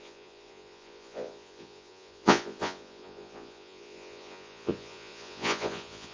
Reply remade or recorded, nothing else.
remade